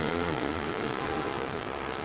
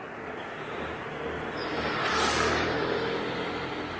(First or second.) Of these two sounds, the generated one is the first